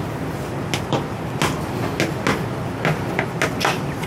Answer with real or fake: real